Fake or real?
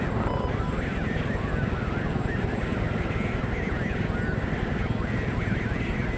real